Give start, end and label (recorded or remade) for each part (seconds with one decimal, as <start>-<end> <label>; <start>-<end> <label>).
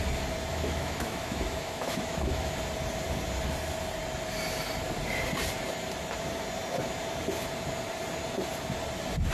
0.0-0.5 recorded; 0.5-2.5 remade; 2.5-9.3 recorded